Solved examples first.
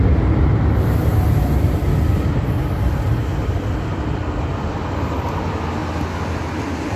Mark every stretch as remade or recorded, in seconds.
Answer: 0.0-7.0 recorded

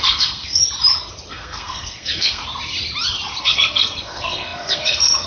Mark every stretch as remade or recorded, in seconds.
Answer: 0.0-0.6 remade; 0.6-1.3 recorded; 1.3-2.4 remade; 2.4-3.4 recorded; 3.4-5.3 remade

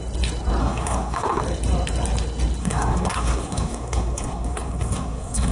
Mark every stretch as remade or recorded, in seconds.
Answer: 0.0-0.6 recorded; 0.6-1.4 remade; 1.4-2.6 recorded; 2.6-5.5 remade

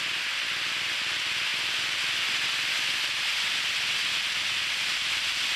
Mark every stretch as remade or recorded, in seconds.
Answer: 0.0-5.6 recorded

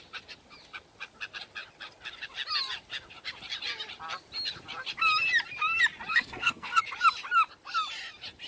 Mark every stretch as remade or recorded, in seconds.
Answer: 0.0-6.1 recorded; 6.1-6.8 remade; 6.8-8.5 recorded

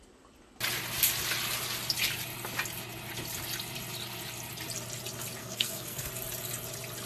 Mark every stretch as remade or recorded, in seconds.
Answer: 0.0-5.4 recorded; 5.4-6.1 remade; 6.1-7.1 recorded

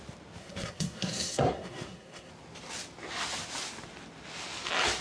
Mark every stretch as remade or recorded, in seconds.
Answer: 0.0-0.4 recorded; 0.4-2.3 remade; 2.3-5.0 recorded

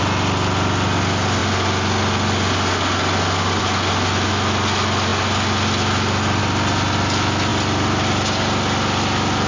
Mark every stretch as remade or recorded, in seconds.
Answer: 0.0-9.5 recorded